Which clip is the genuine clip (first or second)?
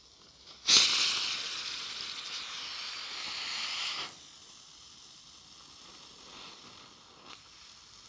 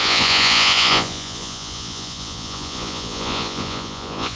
first